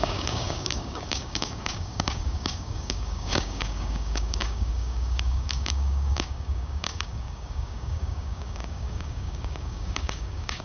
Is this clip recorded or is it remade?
remade